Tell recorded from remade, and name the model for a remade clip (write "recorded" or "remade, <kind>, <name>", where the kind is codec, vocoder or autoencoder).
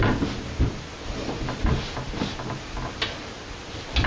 recorded